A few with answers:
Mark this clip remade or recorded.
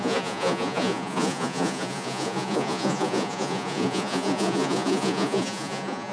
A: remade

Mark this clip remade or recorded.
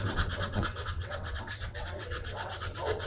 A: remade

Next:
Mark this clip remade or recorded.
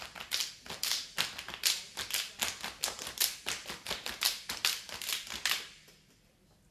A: recorded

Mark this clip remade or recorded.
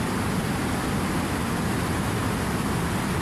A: recorded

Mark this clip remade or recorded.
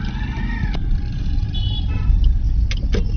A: recorded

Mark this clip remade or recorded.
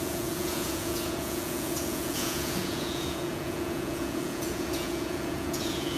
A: remade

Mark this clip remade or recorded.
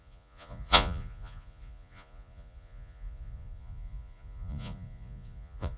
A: remade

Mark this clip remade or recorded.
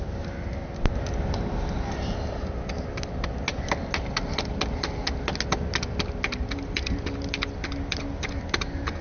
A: recorded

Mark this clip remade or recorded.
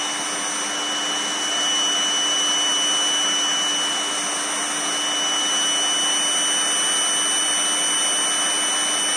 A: recorded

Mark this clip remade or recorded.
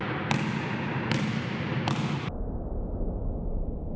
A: recorded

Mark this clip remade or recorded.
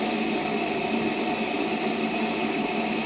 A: recorded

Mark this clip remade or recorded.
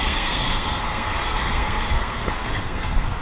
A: remade